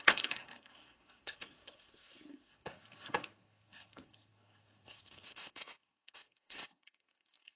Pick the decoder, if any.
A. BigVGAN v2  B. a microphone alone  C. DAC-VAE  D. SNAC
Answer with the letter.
D